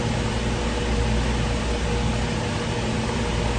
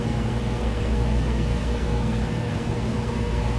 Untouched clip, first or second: first